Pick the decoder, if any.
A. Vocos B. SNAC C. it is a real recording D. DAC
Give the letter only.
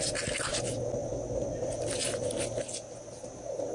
C